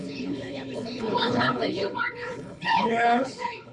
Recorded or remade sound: remade